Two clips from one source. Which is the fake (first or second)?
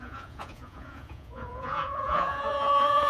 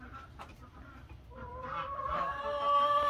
first